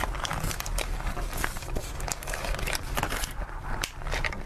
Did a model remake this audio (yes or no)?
no